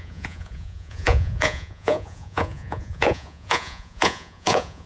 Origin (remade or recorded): remade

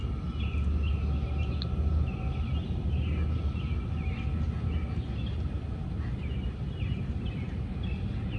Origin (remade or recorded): recorded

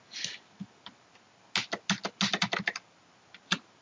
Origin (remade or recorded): recorded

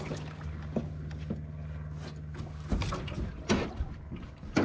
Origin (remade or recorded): recorded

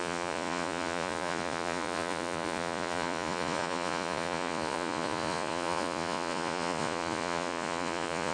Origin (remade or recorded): remade